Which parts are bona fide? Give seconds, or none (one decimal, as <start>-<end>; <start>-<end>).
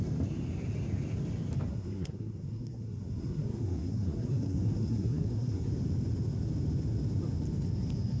0.0-1.7; 5.7-8.2